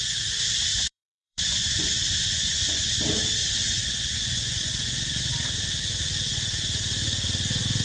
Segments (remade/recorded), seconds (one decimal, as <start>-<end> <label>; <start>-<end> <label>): 0.0-0.7 recorded; 0.7-3.0 remade; 3.0-3.4 recorded; 3.4-5.3 remade; 5.3-7.8 recorded

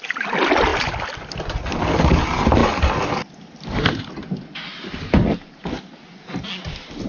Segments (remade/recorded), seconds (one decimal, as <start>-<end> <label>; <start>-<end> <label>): 0.0-7.1 recorded